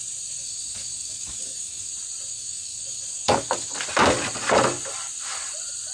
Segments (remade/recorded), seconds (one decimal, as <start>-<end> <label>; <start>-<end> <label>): 0.0-0.4 recorded; 0.4-1.9 remade; 1.9-2.3 recorded; 2.3-3.8 remade; 3.8-5.9 recorded